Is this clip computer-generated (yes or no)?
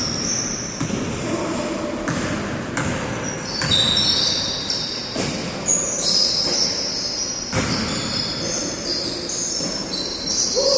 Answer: no